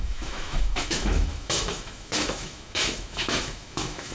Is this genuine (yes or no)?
no